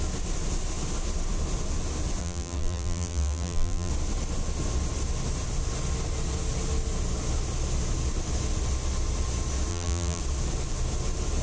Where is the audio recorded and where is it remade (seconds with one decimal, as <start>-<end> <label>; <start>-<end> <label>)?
0.0-2.2 recorded; 2.2-3.9 remade; 3.9-9.7 recorded; 9.7-10.2 remade; 10.2-11.4 recorded